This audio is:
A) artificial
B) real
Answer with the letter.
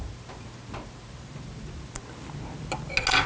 B